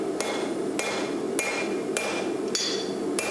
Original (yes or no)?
yes